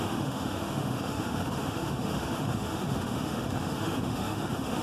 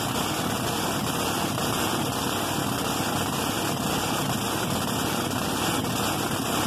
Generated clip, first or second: first